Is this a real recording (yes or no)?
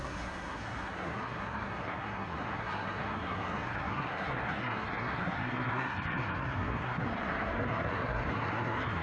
no